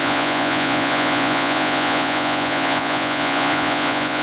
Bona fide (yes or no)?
no